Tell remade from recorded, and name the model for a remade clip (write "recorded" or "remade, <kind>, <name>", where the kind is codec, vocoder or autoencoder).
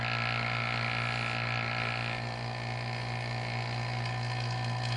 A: recorded